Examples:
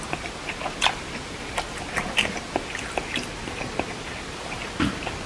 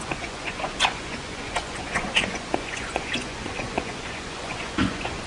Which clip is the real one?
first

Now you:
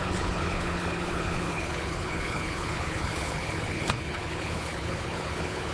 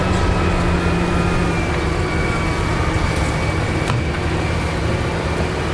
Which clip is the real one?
second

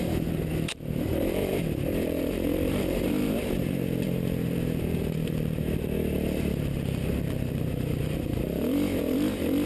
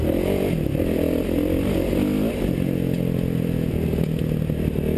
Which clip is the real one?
second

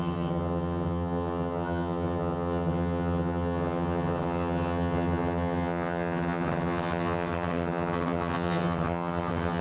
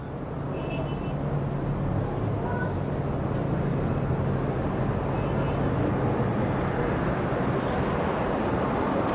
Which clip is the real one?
second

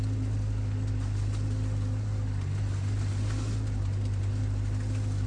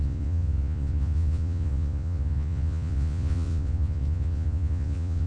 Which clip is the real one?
first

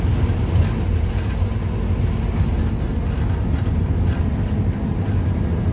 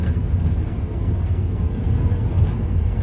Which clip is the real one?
first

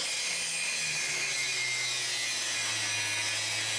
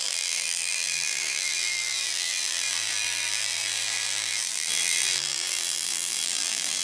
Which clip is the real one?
first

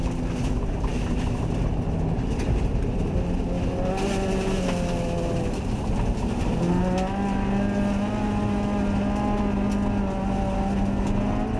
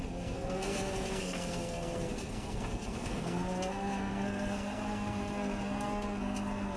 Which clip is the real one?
first